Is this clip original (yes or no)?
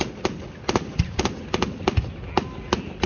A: yes